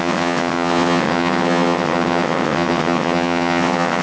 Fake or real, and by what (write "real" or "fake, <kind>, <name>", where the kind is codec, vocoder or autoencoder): fake, vocoder, WaveNeXt